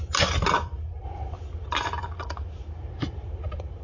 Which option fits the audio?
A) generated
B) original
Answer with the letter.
B